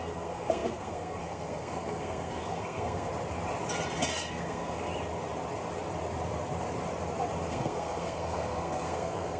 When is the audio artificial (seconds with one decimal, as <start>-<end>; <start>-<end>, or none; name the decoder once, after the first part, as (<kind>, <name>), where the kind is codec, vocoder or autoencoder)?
0.0-3.1 (codec, SNAC); 4.3-4.9; 7.5-9.4